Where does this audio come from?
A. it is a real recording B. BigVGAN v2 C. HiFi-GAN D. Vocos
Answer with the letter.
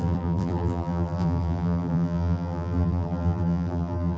B